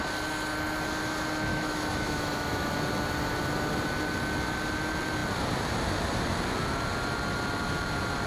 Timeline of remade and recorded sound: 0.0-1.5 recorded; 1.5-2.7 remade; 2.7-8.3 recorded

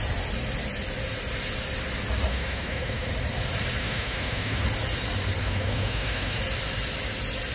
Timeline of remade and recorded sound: 0.0-2.3 recorded; 2.3-3.1 remade; 3.1-3.8 recorded; 3.8-4.6 remade; 4.6-5.4 recorded; 5.4-6.4 remade; 6.4-7.5 recorded